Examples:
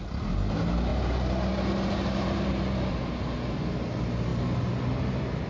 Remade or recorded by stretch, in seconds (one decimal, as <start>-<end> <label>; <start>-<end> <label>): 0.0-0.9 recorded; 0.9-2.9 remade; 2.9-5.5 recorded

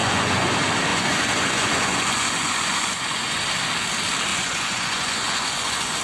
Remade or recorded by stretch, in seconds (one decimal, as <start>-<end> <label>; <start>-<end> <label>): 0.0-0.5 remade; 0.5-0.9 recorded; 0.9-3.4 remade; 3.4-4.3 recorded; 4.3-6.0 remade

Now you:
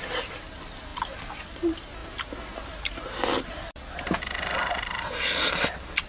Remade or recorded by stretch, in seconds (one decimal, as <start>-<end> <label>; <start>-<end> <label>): 0.0-6.1 recorded